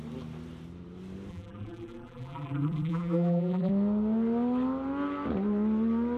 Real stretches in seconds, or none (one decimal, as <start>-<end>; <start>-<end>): 0.0-1.3; 3.7-6.2